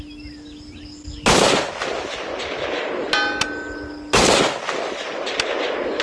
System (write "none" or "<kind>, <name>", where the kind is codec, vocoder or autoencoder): none